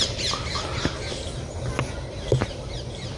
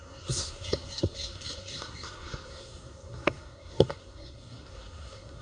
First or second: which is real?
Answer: first